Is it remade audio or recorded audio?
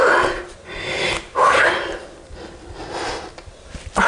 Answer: recorded